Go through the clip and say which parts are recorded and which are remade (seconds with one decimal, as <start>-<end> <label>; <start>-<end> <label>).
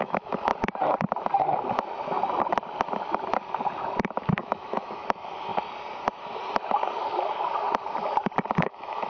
0.0-0.5 remade; 0.5-4.4 recorded; 4.4-5.5 remade; 5.5-8.6 recorded; 8.6-9.1 remade